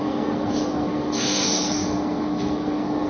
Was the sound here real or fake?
fake